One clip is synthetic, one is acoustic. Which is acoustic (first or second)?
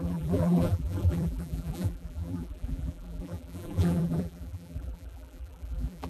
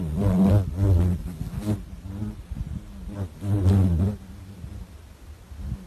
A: second